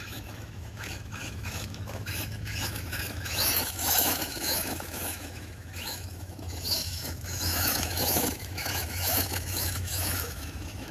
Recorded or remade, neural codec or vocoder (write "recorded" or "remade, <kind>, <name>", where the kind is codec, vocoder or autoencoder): remade, autoencoder, DAC-VAE